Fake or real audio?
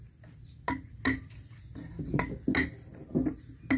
real